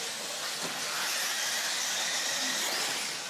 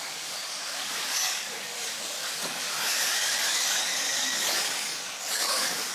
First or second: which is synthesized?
second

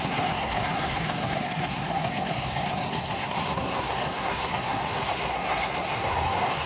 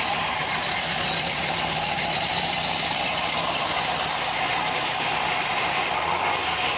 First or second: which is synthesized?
first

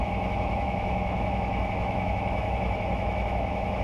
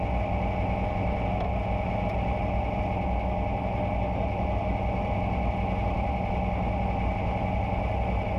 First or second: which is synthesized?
first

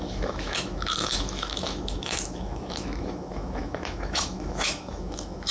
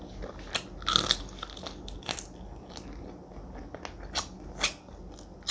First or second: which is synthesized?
first